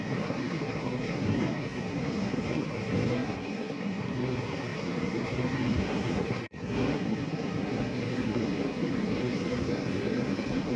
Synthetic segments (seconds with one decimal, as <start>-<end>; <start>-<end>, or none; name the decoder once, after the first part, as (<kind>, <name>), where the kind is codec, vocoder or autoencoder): 0.0-10.8 (codec, SNAC)